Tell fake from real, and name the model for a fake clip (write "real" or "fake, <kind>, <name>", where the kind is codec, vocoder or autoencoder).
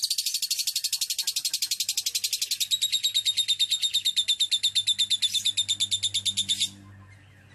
real